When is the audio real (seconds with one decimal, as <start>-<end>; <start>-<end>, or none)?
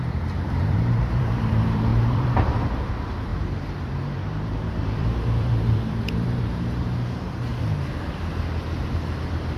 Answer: 7.5-9.2